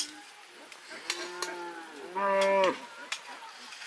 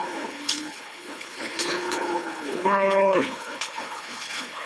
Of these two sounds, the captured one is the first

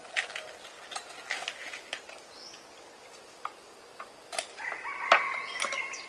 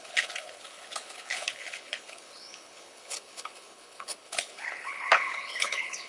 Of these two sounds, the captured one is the first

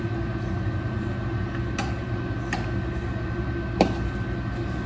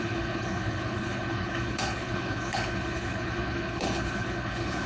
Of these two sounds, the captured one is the first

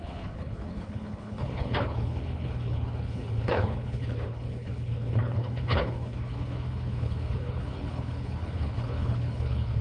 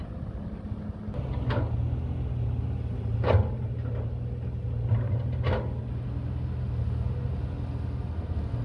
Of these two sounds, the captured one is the second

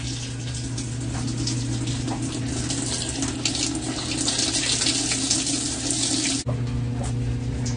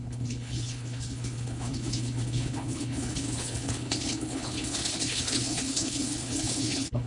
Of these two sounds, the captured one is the first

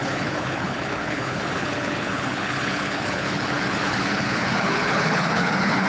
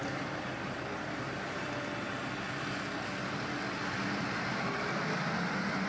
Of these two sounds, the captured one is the second